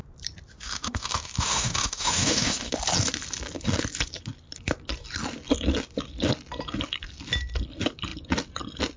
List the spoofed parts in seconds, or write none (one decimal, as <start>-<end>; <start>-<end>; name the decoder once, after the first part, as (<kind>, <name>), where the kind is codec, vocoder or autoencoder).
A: 0.5-2.7 (autoencoder, DAC-VAE)